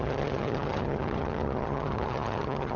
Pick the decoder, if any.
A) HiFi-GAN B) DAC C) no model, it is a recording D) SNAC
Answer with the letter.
A